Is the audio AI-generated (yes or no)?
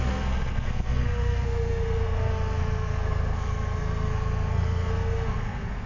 yes